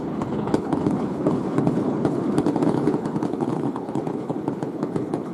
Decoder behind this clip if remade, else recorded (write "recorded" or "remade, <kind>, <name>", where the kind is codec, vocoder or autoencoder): remade, codec, HILCodec